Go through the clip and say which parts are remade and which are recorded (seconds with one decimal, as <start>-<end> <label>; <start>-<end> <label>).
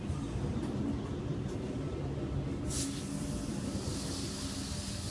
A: 0.0-5.1 recorded